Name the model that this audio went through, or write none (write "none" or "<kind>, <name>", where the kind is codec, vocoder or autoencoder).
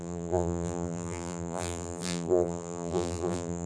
vocoder, BigVGAN v2